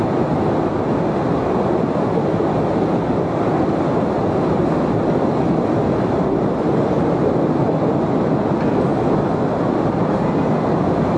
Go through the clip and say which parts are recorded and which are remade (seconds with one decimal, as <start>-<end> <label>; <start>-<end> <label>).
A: 0.0-8.9 recorded; 8.9-11.2 remade